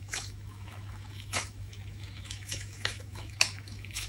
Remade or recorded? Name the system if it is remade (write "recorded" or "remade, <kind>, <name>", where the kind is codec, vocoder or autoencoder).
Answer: remade, autoencoder, DAC-VAE